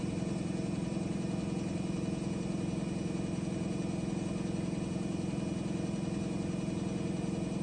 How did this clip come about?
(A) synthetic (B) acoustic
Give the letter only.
B